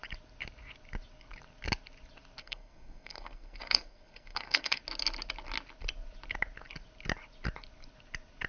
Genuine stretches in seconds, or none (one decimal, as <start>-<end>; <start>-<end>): 0.0-2.4; 4.8-8.5